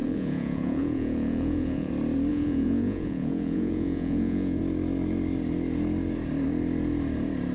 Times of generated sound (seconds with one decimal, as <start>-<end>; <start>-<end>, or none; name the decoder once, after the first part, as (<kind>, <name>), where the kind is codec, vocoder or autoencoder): 0.0-1.9 (vocoder, Vocos); 2.3-4.6